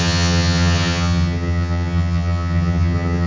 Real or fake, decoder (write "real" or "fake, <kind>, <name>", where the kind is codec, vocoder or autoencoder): fake, vocoder, HiFi-GAN